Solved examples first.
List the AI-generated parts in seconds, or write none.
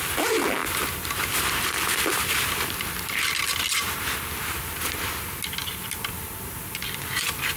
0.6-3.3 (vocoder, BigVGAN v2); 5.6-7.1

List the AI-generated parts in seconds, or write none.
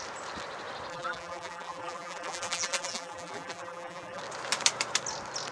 0.9-4.2 (vocoder, BigVGAN v2)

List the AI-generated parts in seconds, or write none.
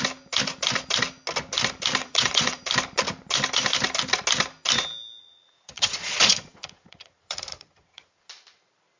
2.0-2.6 (vocoder, Vocos); 5.2-8.3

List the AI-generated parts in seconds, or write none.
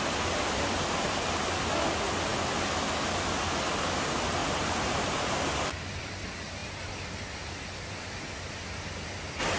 4.4-5.2 (vocoder, BigVGAN v2)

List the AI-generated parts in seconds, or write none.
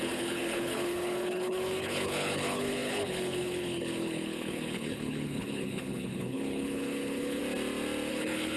0.0-7.4 (codec, HILCodec); 8.1-8.6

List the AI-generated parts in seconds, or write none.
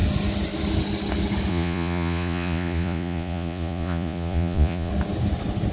1.5-4.9 (vocoder, Vocos)